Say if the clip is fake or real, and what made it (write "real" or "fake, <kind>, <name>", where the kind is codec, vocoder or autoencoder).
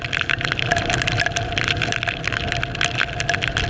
real